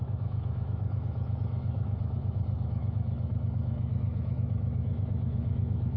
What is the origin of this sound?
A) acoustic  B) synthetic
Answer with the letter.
B